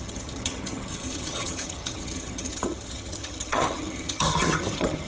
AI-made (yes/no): yes